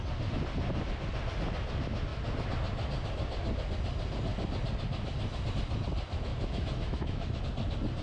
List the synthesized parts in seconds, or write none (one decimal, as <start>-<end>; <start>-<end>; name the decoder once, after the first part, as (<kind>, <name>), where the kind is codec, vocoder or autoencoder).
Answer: 6.3-7.4 (autoencoder, DAC-VAE)